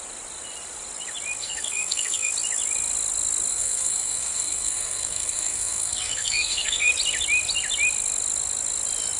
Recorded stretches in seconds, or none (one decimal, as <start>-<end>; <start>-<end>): 0.0-1.4; 2.3-3.5; 6.9-9.2